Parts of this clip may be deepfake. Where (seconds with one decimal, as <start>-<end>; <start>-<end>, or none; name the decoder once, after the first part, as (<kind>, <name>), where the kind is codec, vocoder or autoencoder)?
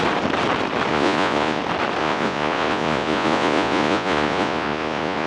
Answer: 0.9-1.6 (vocoder, Vocos); 2.0-5.3